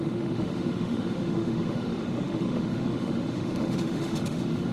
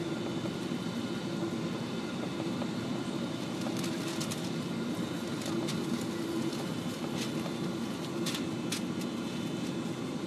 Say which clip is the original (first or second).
second